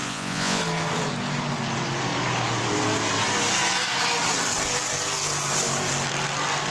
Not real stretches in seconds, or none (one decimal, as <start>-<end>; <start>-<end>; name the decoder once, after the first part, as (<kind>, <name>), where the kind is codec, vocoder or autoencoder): 0.0-0.6 (vocoder, Vocos)